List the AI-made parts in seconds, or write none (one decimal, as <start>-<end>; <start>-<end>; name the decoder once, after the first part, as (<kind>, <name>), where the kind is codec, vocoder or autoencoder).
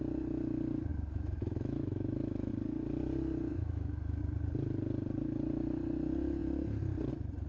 0.9-2.5 (autoencoder, DAC-VAE); 3.5-4.2